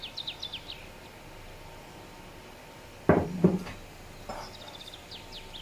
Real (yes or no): yes